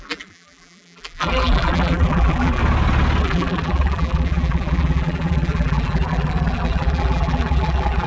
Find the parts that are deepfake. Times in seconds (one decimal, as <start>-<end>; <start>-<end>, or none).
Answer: 0.0-2.6; 3.2-8.1